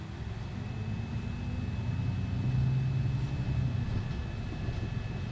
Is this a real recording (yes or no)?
yes